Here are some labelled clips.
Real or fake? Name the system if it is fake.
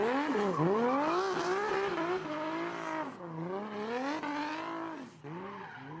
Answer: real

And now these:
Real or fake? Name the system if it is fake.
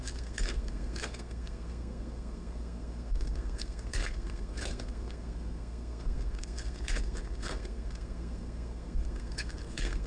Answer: fake, codec, SNAC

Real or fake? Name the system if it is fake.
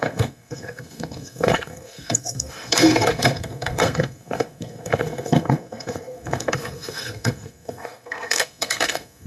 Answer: fake, codec, SNAC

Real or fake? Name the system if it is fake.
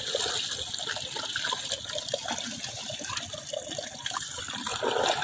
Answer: real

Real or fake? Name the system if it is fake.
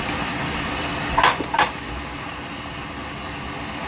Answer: real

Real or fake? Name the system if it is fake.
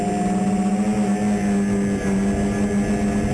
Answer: real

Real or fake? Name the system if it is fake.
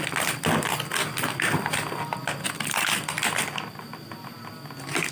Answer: real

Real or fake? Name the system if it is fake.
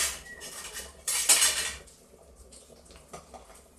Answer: real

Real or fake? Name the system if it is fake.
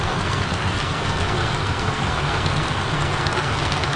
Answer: fake, codec, SNAC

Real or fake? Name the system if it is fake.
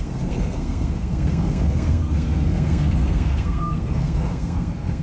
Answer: fake, codec, SNAC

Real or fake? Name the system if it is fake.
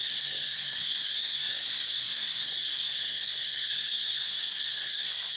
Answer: fake, codec, SNAC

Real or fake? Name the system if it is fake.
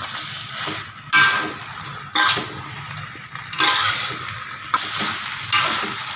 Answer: real